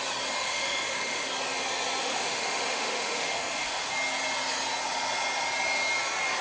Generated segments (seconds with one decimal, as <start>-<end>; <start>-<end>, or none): 0.4-1.3; 2.0-3.9